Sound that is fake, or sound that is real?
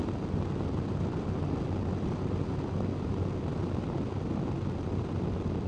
real